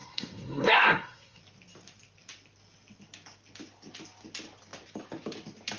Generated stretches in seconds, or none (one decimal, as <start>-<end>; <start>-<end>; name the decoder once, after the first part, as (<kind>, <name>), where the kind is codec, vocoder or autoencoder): 0.0-1.4 (codec, SNAC)